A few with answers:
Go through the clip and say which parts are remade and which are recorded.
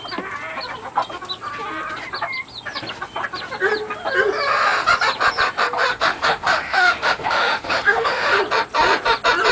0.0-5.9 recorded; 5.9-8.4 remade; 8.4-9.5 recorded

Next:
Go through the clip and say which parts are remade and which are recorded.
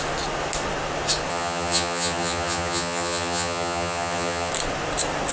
0.0-1.3 recorded; 1.3-4.5 remade; 4.5-5.3 recorded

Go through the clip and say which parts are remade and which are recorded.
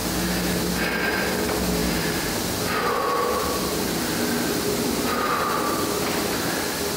0.0-0.6 remade; 0.6-1.8 recorded; 1.8-5.4 remade; 5.4-7.0 recorded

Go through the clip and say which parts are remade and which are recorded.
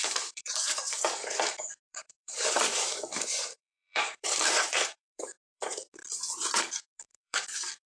0.0-6.0 remade; 6.0-6.6 recorded; 6.6-7.9 remade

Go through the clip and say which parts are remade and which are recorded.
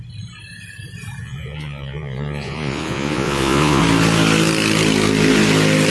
0.0-1.2 recorded; 1.2-3.8 remade; 3.8-5.9 recorded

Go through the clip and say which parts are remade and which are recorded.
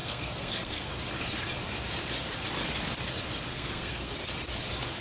0.0-0.9 remade; 0.9-3.5 recorded; 3.5-4.1 remade; 4.1-5.0 recorded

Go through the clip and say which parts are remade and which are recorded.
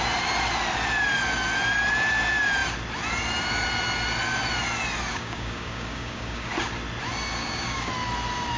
0.0-5.1 recorded; 5.1-6.5 remade; 6.5-7.4 recorded; 7.4-7.9 remade; 7.9-8.6 recorded